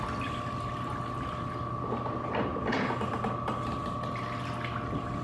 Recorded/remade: recorded